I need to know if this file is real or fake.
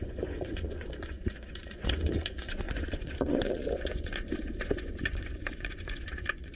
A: fake